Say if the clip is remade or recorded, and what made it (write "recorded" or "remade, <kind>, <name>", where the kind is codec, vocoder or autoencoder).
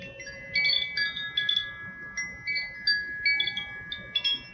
recorded